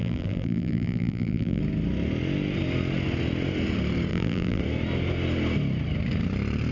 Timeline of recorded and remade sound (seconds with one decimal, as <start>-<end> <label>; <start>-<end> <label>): 0.0-1.6 remade; 1.6-4.1 recorded; 4.1-4.6 remade; 4.6-6.7 recorded